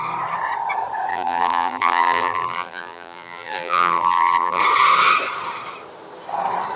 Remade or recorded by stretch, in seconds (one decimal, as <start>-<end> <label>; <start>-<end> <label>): 0.0-1.1 recorded; 1.1-4.6 remade; 4.6-6.8 recorded